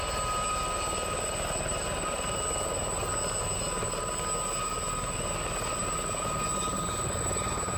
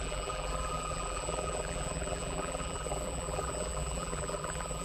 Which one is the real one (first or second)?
first